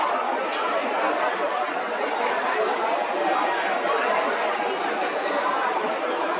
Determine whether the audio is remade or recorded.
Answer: recorded